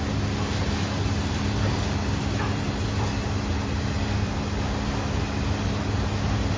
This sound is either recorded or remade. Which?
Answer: recorded